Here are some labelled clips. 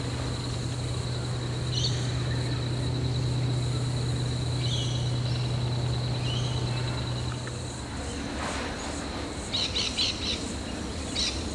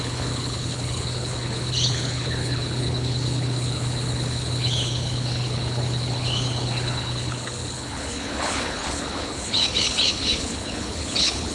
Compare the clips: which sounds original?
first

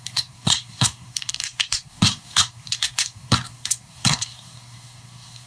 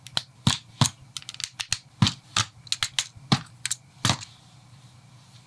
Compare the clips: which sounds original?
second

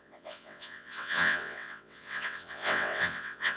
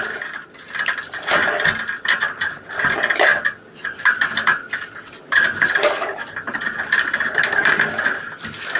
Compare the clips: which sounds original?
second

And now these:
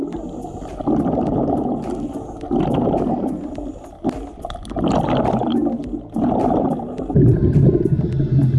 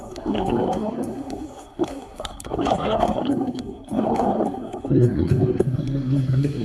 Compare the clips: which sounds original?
first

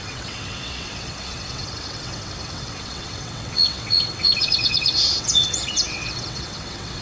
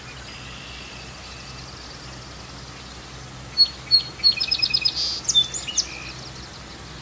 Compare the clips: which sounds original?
second